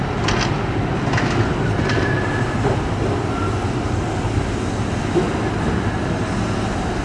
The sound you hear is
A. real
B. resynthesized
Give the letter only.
A